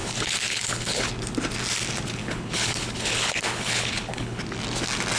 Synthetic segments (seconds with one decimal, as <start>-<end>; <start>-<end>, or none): 0.0-1.1; 2.2-4.4